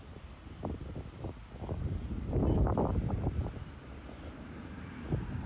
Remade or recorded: remade